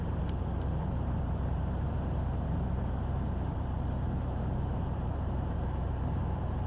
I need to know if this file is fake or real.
fake